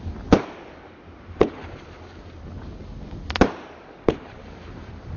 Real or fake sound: real